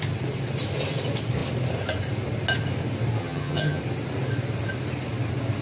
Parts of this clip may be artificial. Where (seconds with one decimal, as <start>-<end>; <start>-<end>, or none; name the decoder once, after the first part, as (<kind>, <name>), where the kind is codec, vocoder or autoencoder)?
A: 3.2-3.8 (vocoder, HiFi-GAN)